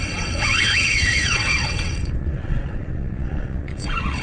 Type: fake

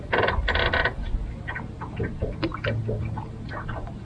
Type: real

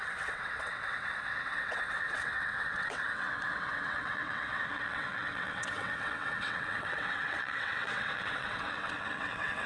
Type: fake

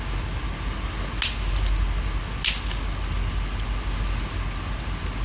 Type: real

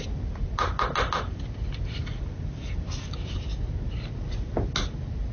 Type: real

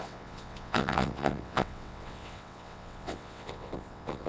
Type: fake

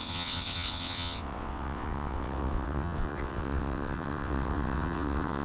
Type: fake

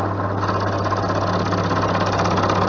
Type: real